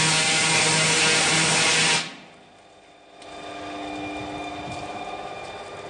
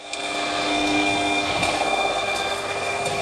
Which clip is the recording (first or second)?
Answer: first